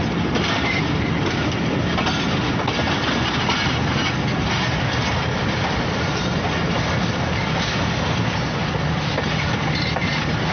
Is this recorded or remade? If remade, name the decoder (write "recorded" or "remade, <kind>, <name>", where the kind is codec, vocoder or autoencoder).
recorded